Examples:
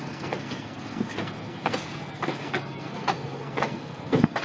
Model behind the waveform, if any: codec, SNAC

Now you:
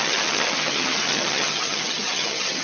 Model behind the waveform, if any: vocoder, HiFi-GAN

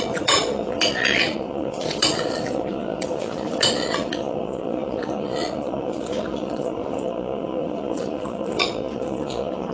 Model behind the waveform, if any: vocoder, Vocos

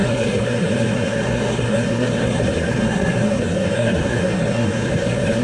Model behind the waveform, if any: codec, SNAC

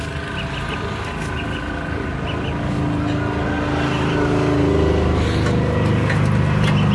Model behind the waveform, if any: none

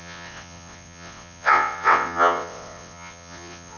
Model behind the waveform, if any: vocoder, WaveNeXt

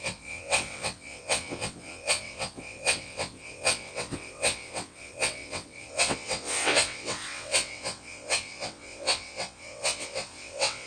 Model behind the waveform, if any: vocoder, WaveNeXt